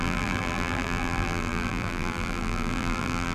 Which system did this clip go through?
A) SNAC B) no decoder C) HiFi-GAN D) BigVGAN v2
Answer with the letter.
D